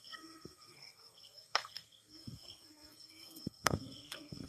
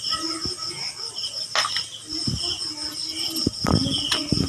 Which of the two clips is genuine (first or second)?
second